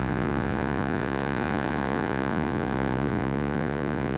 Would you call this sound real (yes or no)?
no